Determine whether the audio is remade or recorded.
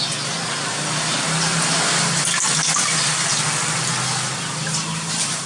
remade